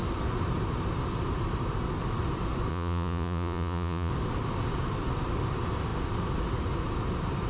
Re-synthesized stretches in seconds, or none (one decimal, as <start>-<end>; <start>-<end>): 2.7-4.1